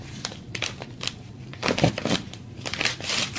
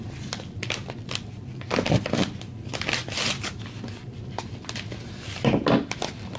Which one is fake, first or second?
first